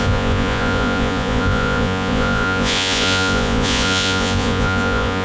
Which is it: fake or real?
fake